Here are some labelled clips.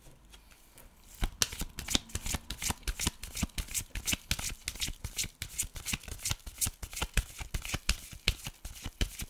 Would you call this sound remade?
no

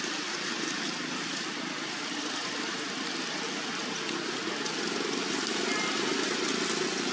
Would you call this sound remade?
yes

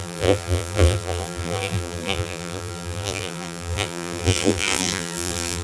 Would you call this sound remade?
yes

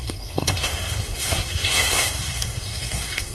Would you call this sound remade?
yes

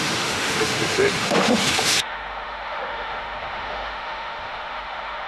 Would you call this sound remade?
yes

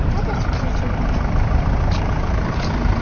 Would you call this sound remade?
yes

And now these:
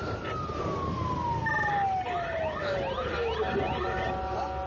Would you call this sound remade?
no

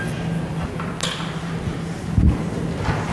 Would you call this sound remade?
no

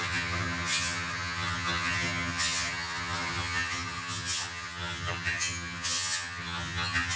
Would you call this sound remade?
yes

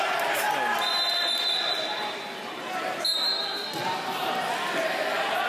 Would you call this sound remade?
no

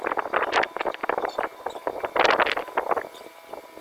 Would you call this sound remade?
no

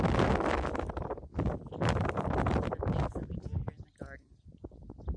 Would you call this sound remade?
no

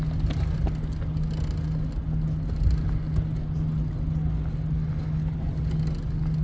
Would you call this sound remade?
no